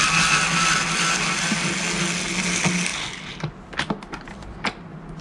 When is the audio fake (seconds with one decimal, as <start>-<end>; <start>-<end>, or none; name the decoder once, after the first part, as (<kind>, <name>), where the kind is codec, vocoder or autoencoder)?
none